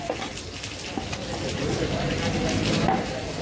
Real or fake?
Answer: real